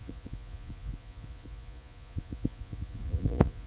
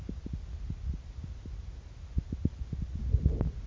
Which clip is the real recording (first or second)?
second